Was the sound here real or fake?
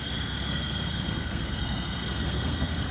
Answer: fake